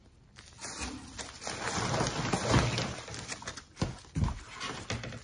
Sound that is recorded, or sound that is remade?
recorded